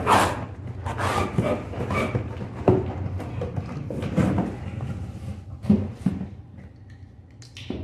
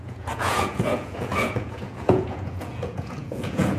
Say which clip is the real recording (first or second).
first